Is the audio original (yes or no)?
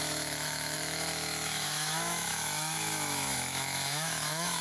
no